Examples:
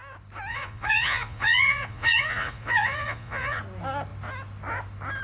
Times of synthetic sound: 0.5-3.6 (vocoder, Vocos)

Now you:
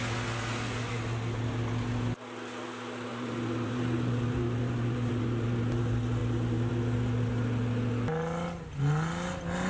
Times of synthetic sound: 3.1-5.6 (vocoder, BigVGAN v2)

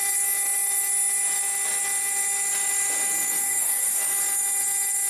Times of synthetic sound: 3.4-4.0 (codec, DAC)

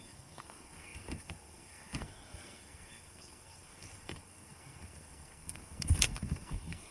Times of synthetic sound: 0.0-6.9 (codec, SNAC)

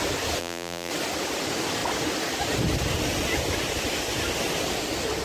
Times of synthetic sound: 0.4-0.9 (vocoder, BigVGAN v2)